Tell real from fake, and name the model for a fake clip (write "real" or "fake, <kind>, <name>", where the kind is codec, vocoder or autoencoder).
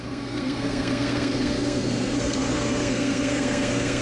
fake, codec, SNAC